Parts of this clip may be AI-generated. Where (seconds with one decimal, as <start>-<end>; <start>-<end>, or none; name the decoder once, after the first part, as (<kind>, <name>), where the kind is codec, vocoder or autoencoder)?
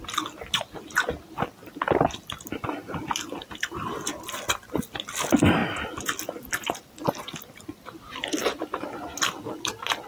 none